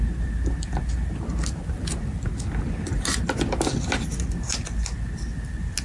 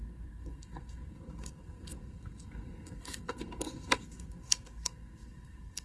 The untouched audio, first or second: first